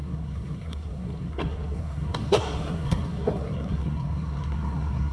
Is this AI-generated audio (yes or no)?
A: yes